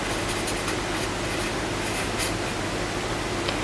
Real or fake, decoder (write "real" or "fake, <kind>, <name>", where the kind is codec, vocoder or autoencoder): real